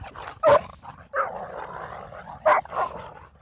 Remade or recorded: recorded